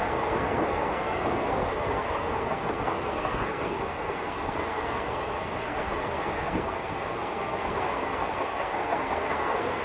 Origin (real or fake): fake